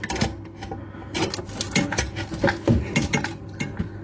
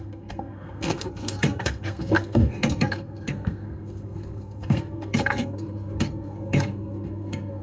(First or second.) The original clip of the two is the first